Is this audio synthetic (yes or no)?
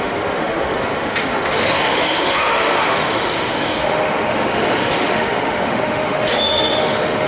yes